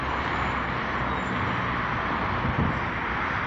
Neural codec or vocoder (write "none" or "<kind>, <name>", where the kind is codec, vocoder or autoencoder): none